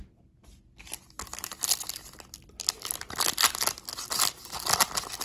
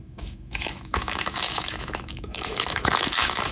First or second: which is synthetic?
second